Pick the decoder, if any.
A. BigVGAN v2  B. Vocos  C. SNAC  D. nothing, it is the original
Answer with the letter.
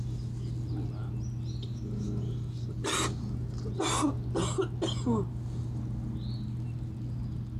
D